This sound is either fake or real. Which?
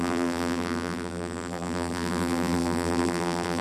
fake